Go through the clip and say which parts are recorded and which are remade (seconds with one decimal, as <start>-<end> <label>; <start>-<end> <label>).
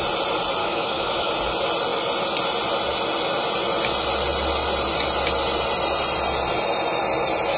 0.0-0.6 recorded; 0.6-1.3 remade; 1.3-7.6 recorded